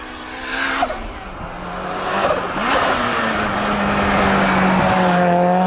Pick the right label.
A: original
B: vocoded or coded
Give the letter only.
A